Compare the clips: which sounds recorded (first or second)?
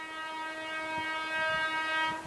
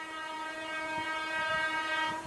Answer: first